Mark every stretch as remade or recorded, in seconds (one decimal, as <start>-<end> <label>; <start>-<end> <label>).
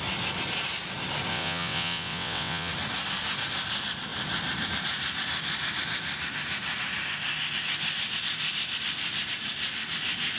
0.0-1.3 recorded; 1.3-2.7 remade; 2.7-10.4 recorded